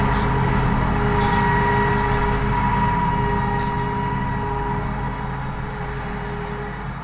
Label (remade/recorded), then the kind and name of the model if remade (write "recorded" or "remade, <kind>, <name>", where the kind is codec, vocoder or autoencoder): recorded